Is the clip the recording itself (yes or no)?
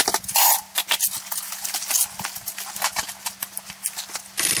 yes